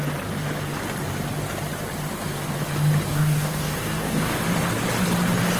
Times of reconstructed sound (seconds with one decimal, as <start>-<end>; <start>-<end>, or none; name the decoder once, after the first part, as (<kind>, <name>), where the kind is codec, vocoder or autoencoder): 3.1-4.4 (codec, DAC)